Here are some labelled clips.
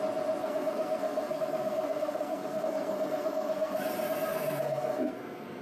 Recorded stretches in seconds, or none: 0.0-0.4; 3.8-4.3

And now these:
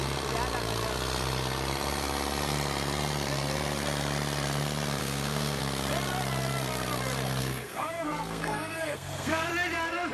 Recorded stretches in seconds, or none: 0.0-5.0; 5.6-7.4; 9.5-10.1

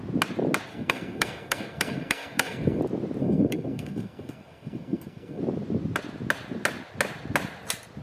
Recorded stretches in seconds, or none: 0.0-0.7; 2.8-3.2; 5.4-8.0